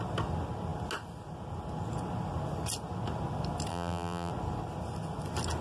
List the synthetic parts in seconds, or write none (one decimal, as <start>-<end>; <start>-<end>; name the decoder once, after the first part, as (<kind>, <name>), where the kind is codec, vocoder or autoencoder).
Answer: 3.7-4.3 (vocoder, BigVGAN v2)